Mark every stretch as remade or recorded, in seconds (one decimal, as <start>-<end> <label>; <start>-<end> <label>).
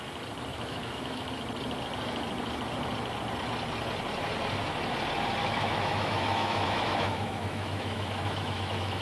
0.0-0.5 recorded; 0.5-1.3 remade; 1.3-5.4 recorded; 5.4-9.0 remade